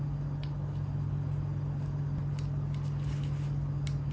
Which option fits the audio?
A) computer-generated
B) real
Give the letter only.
B